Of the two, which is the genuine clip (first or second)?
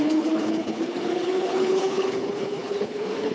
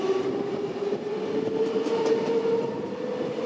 second